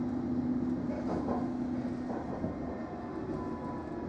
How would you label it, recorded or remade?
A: recorded